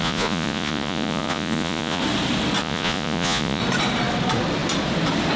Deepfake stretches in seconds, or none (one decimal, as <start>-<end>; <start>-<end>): 0.0-2.0; 2.6-3.6